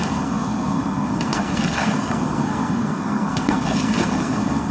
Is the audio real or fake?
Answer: fake